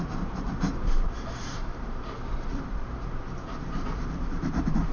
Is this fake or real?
fake